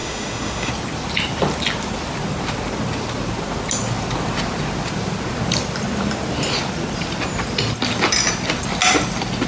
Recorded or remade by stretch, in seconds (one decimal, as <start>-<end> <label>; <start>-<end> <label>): 0.0-0.7 remade; 0.7-9.5 recorded